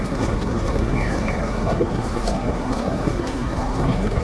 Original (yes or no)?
no